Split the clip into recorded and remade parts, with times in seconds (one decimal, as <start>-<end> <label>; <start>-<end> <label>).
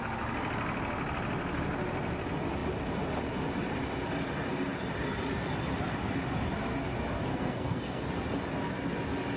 0.0-7.3 recorded; 7.3-8.0 remade; 8.0-9.4 recorded